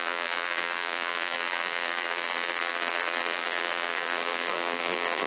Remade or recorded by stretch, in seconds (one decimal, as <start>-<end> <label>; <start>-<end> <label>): 0.0-5.3 remade